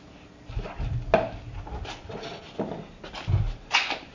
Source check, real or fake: real